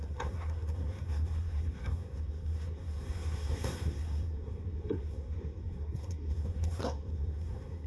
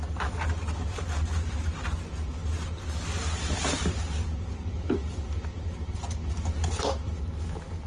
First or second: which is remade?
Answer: first